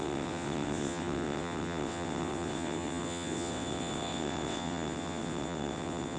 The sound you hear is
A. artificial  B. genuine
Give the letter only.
A